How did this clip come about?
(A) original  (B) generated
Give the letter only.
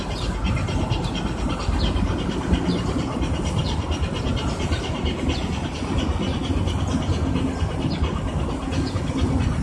A